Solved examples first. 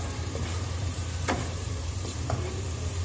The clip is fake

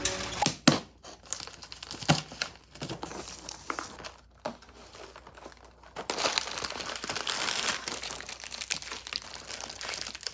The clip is real